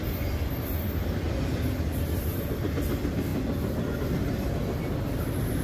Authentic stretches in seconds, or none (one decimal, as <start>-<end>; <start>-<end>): 0.0-1.9; 2.5-5.6